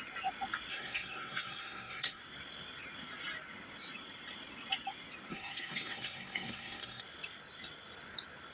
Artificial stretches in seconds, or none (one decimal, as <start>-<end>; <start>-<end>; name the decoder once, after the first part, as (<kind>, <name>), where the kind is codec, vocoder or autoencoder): 0.7-2.2 (codec, SNAC); 5.3-7.0